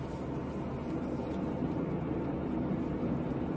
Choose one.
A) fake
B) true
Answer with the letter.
B